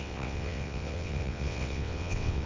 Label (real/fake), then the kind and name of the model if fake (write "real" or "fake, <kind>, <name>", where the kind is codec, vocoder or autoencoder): fake, vocoder, WaveNeXt